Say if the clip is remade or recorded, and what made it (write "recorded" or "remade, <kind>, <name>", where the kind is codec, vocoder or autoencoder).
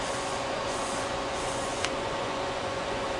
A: remade, vocoder, Vocos